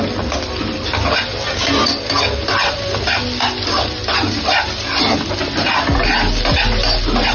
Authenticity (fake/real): real